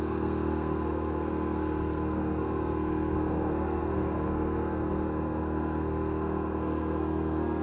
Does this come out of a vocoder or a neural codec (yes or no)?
yes